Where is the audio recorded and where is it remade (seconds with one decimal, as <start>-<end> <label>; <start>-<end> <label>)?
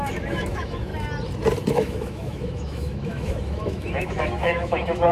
0.0-0.9 remade; 0.9-1.7 recorded; 1.7-5.1 remade